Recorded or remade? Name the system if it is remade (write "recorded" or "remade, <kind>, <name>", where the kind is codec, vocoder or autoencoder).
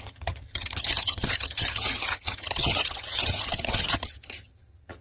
remade, vocoder, HiFi-GAN